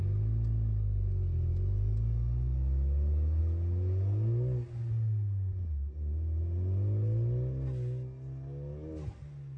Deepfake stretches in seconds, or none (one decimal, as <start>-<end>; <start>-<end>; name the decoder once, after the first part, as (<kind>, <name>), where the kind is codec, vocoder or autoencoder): none

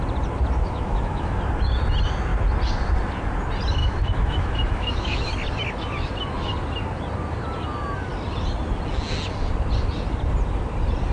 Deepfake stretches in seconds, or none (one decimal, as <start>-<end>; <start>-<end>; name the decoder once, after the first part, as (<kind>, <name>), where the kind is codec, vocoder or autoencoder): 0.6-1.4 (autoencoder, DAC-VAE); 3.8-5.3

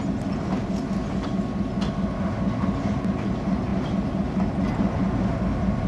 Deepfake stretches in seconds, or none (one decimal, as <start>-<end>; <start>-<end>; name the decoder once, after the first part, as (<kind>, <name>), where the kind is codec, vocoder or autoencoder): none

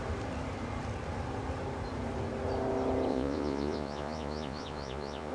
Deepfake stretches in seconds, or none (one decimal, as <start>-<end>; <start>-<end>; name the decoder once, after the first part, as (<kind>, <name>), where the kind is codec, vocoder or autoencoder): 3.1-5.3 (vocoder, Vocos)

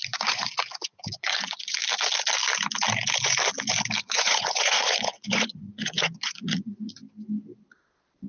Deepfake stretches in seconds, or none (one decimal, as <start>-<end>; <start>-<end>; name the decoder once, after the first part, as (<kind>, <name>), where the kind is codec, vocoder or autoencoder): 0.0-1.8 (vocoder, Vocos); 4.0-7.0

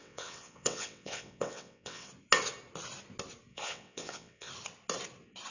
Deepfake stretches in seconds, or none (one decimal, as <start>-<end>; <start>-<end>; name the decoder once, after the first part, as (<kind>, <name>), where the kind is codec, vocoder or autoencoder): 0.0-2.1 (vocoder, WaveNeXt); 3.5-4.5